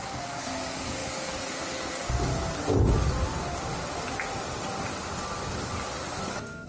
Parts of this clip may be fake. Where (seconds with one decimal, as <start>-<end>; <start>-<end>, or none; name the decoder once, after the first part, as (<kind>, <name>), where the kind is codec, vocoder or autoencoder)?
0.0-2.3 (codec, DAC); 6.3-6.7